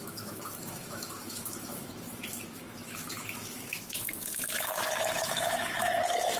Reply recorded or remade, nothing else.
remade